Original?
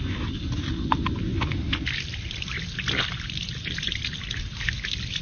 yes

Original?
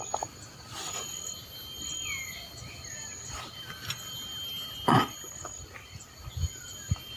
yes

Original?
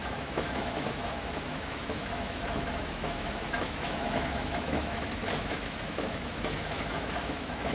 no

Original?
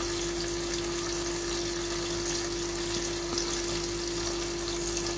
yes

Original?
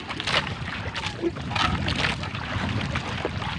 yes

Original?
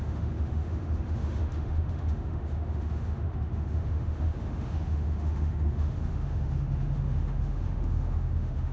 no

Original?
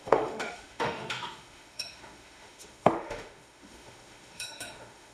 no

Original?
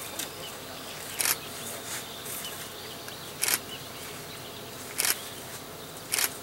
yes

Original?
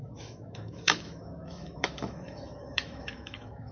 no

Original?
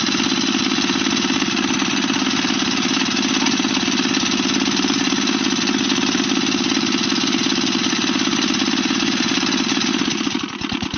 yes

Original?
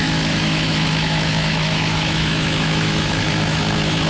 no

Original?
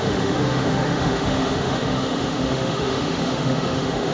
no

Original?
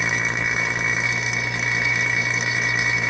no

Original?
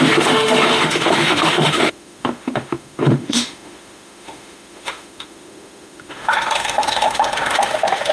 no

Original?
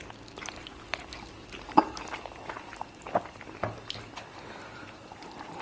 yes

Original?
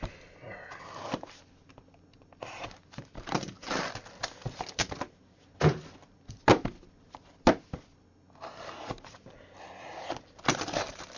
yes